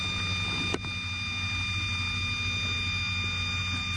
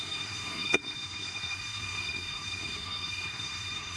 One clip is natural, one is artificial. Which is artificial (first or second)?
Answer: second